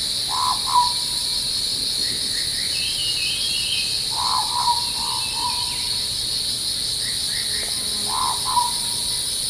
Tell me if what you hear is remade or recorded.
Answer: recorded